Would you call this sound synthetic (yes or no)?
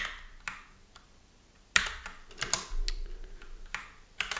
no